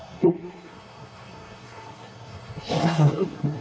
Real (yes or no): no